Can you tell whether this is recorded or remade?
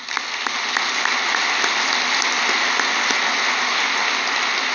recorded